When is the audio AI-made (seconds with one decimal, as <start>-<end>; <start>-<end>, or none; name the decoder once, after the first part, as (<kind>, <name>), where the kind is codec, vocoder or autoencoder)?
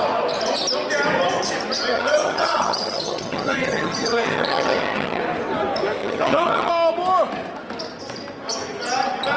1.9-5.2 (vocoder, HiFi-GAN); 6.0-6.7